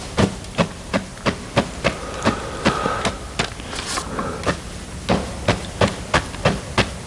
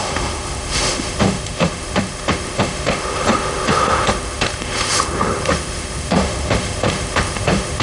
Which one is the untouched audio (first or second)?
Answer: first